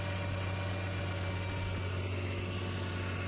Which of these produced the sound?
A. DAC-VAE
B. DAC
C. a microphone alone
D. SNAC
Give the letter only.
C